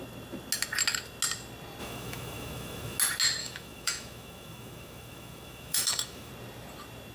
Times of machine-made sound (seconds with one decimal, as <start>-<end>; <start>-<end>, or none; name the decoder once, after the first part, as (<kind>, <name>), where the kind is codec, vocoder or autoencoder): 1.8-3.0 (autoencoder, DAC-VAE); 3.4-6.3